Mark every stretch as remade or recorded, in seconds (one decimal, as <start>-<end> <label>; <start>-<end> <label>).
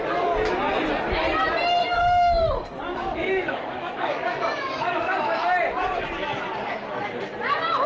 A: 0.0-1.8 recorded; 1.8-5.4 remade; 5.4-7.9 recorded